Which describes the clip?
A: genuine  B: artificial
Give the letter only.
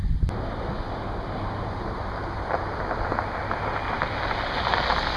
A